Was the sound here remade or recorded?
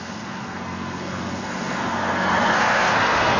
remade